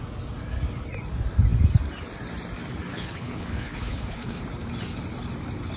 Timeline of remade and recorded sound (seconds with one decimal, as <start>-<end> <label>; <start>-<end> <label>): 0.0-2.9 recorded; 2.9-4.4 remade; 4.4-5.8 recorded